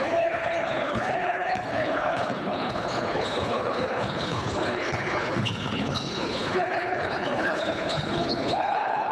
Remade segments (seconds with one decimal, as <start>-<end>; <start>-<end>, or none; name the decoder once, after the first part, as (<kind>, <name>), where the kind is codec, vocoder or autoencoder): 0.0-9.1 (codec, HILCodec)